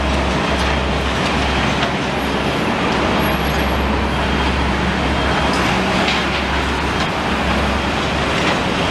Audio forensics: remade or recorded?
recorded